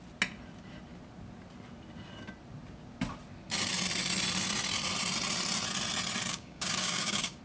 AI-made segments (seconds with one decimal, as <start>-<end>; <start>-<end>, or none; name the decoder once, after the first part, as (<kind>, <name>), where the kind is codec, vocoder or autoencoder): 6.3-7.4 (codec, DAC)